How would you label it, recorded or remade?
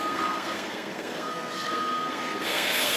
remade